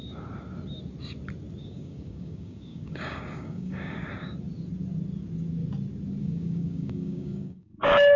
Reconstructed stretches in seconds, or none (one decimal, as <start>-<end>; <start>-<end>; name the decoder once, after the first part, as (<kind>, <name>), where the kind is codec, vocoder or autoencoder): 1.6-4.0 (codec, DAC); 6.2-8.2